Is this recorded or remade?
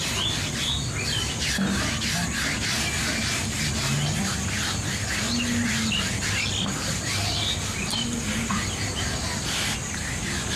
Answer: recorded